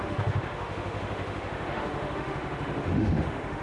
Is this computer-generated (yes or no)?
yes